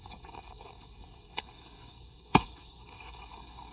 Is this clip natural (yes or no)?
no